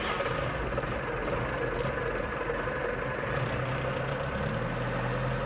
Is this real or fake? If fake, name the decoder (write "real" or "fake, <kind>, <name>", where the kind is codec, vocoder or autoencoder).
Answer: real